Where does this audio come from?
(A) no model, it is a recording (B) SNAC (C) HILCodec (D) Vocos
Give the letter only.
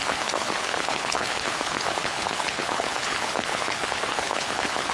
C